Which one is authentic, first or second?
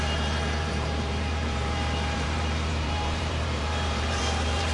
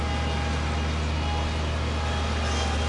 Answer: second